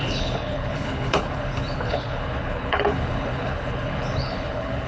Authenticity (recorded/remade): remade